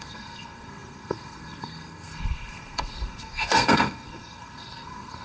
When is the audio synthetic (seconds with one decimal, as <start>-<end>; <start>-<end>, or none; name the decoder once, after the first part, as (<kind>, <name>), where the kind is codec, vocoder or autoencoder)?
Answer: 0.0-5.2 (codec, SNAC)